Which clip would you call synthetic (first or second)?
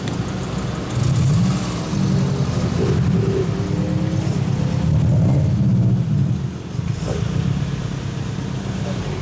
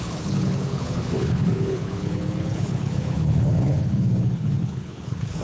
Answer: second